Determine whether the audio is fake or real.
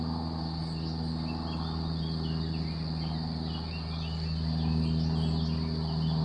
real